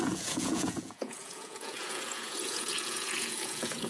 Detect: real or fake fake